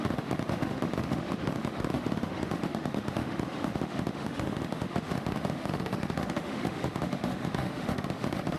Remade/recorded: remade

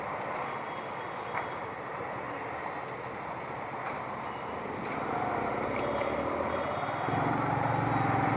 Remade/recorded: recorded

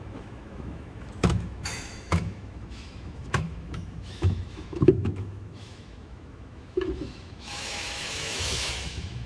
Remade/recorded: remade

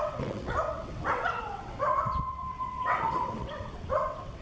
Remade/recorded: remade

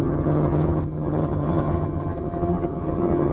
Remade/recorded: remade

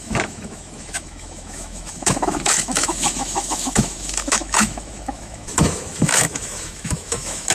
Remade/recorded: remade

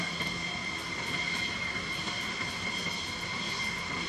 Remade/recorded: recorded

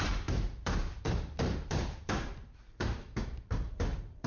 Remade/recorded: remade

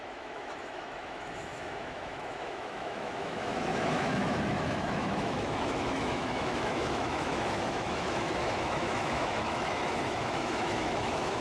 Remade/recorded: remade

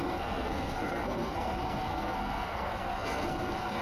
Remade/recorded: remade